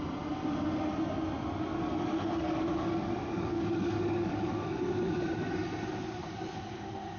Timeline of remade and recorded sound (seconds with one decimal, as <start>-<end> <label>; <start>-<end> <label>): 0.0-1.7 recorded; 1.7-4.5 remade; 4.5-7.2 recorded